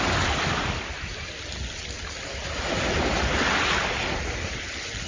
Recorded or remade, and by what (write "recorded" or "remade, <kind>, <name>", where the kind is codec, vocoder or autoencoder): recorded